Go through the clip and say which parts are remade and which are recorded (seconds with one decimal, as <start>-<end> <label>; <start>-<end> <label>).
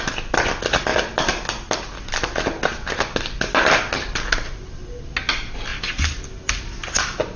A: 0.0-5.7 recorded; 5.7-7.4 remade